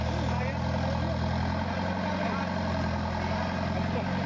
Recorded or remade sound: recorded